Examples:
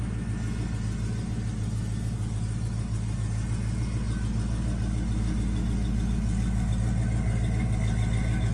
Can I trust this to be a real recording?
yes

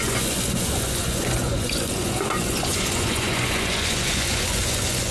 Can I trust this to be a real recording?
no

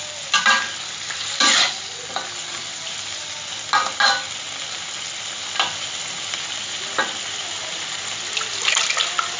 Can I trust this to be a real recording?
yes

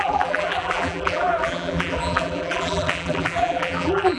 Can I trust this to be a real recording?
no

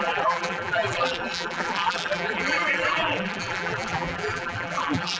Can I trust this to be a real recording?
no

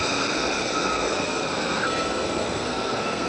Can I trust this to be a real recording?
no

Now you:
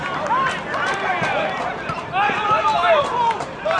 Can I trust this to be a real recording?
no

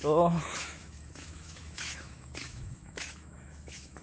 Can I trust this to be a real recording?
no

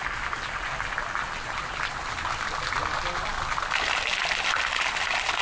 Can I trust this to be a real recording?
yes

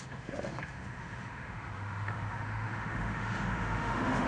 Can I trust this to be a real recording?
no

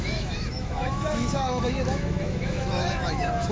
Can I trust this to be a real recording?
no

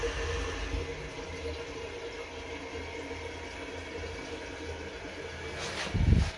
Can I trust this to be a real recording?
yes